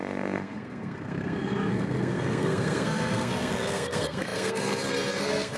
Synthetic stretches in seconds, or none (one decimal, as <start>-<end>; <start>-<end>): 0.0-5.6